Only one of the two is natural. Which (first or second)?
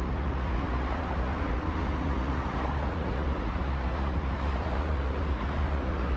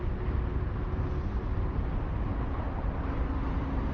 second